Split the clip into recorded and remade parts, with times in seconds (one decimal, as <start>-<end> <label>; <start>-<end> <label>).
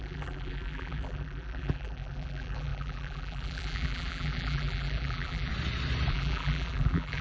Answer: 0.0-5.5 remade; 5.5-6.1 recorded; 6.1-7.2 remade